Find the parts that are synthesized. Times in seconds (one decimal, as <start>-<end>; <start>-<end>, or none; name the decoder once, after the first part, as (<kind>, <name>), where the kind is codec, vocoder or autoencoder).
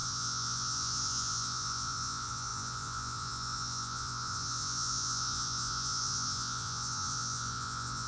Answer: 0.0-8.1 (vocoder, Vocos)